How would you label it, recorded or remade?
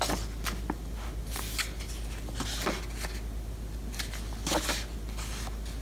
recorded